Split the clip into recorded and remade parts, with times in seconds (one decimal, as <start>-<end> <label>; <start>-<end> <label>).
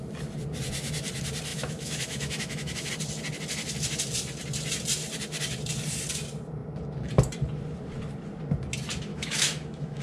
0.0-1.5 recorded; 1.5-2.9 remade; 2.9-9.1 recorded; 9.1-10.0 remade